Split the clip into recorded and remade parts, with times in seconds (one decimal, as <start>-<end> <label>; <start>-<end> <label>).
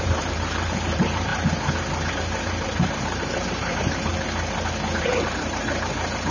0.0-1.3 remade; 1.3-2.1 recorded; 2.1-4.1 remade; 4.1-5.0 recorded; 5.0-6.3 remade